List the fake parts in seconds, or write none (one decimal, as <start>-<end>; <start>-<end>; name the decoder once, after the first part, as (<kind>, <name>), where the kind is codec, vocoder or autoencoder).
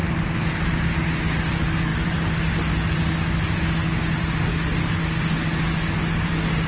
none